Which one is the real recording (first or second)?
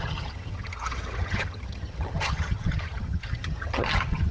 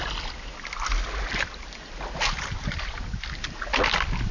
second